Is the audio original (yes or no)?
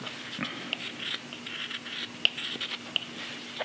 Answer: yes